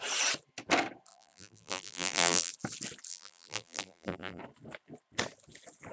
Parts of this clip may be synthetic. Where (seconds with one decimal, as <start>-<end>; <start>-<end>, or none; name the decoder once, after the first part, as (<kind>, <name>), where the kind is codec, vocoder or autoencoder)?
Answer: 1.1-2.5 (vocoder, BigVGAN v2); 3.1-4.4